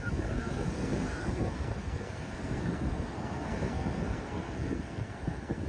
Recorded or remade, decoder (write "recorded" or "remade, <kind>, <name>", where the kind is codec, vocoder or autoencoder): remade, codec, SNAC